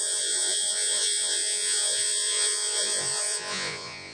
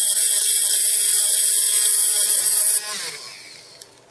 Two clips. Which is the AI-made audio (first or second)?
first